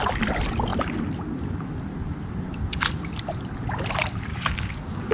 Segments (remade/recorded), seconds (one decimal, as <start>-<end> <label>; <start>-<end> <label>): 0.0-4.3 recorded; 4.3-5.1 remade

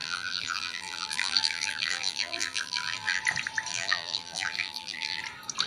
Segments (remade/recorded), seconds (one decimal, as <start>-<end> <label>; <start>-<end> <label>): 0.0-3.2 remade; 3.2-3.7 recorded; 3.7-5.2 remade; 5.2-5.7 recorded

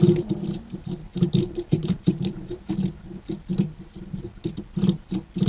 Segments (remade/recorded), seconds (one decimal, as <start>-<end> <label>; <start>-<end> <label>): 0.0-1.0 recorded; 1.0-2.7 remade; 2.7-5.5 recorded

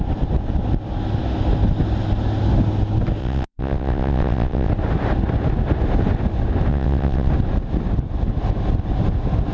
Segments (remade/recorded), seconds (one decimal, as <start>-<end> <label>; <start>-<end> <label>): 0.0-3.2 recorded; 3.2-4.7 remade; 4.7-6.7 recorded; 6.7-7.3 remade; 7.3-9.5 recorded

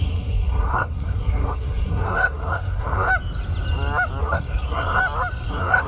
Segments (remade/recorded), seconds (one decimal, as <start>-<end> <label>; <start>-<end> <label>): 0.0-3.1 remade; 3.1-4.2 recorded; 4.2-5.0 remade; 5.0-5.5 recorded; 5.5-5.9 remade

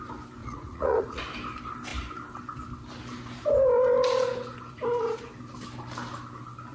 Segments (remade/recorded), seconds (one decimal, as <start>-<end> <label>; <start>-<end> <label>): 0.0-0.4 recorded; 0.4-1.2 remade; 1.2-6.7 recorded